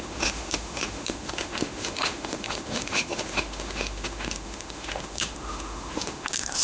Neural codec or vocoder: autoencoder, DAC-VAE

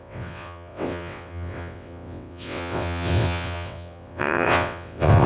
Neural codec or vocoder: vocoder, WaveNeXt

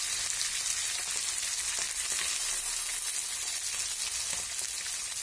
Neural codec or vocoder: none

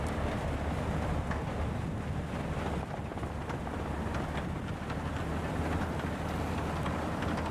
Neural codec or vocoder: none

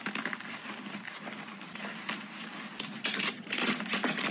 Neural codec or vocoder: none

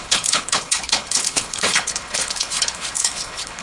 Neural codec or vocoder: codec, HILCodec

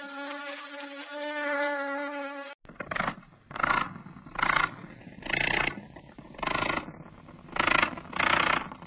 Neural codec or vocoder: none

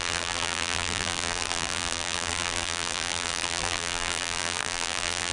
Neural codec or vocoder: vocoder, BigVGAN v2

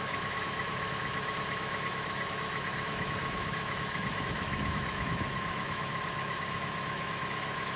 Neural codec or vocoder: autoencoder, DAC-VAE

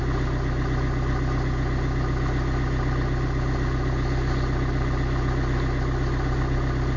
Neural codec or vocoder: none